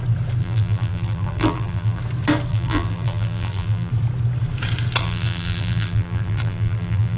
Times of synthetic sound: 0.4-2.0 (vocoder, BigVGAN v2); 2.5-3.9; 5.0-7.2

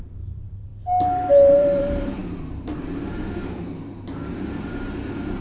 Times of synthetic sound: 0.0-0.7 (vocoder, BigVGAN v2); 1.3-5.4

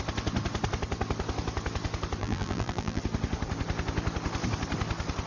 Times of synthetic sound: 2.2-3.0 (vocoder, BigVGAN v2)

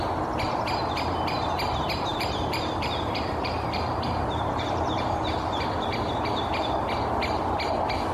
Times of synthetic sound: 2.1-5.3 (vocoder, BigVGAN v2)